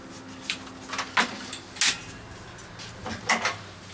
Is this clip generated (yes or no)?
no